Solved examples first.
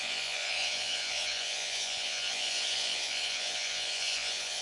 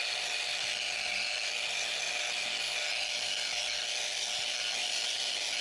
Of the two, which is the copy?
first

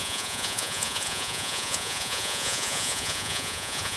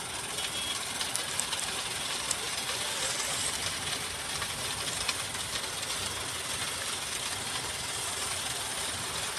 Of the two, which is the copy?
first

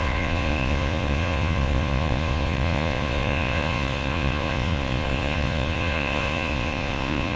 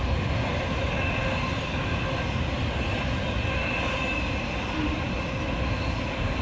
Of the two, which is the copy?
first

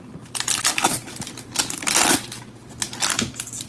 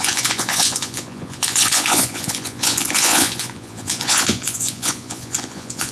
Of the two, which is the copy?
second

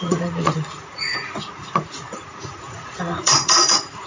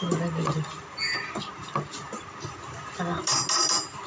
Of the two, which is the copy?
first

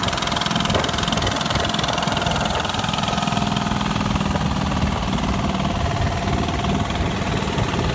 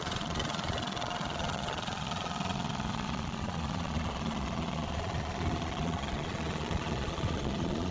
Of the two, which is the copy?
second